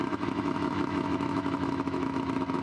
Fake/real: fake